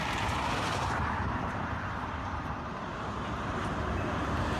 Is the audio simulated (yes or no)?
yes